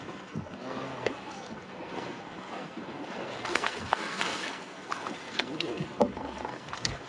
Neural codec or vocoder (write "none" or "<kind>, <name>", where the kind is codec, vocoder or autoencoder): codec, SNAC